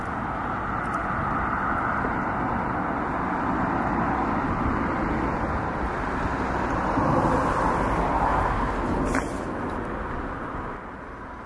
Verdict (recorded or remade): recorded